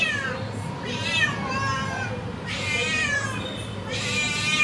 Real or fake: real